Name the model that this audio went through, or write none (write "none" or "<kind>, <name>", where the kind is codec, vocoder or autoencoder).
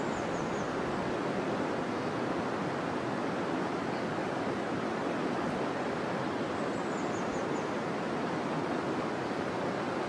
none